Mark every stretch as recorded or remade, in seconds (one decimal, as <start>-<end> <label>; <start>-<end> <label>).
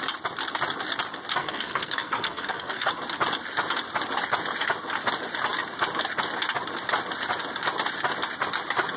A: 0.0-1.4 recorded; 1.4-2.9 remade; 2.9-9.0 recorded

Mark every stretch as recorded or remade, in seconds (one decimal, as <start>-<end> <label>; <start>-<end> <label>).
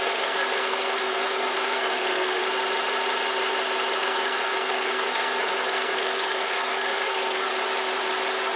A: 0.0-2.4 remade; 2.4-4.0 recorded; 4.0-7.5 remade; 7.5-8.6 recorded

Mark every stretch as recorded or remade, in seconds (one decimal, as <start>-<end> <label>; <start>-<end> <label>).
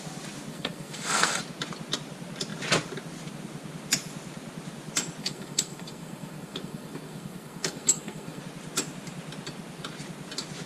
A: 0.0-0.5 recorded; 0.5-1.4 remade; 1.4-5.2 recorded; 5.2-8.4 remade; 8.4-10.7 recorded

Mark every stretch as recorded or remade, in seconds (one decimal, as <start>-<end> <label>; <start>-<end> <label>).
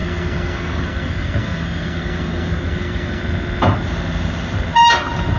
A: 0.0-3.2 remade; 3.2-5.4 recorded